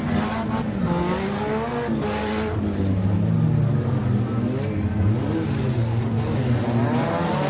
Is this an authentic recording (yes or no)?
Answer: yes